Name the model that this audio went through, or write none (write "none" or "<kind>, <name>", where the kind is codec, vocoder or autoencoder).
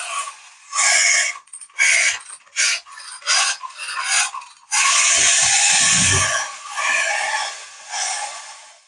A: vocoder, Vocos